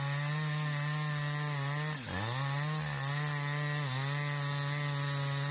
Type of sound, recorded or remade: recorded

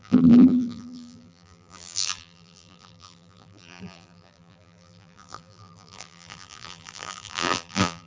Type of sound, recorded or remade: remade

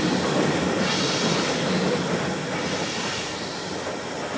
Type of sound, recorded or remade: recorded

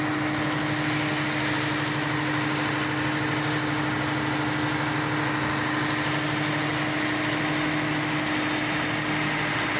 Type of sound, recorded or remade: recorded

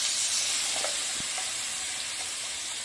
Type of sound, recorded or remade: recorded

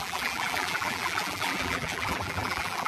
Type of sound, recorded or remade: remade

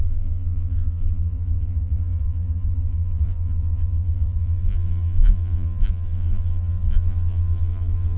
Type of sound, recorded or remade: remade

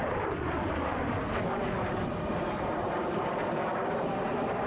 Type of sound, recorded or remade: remade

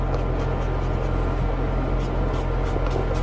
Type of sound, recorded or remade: recorded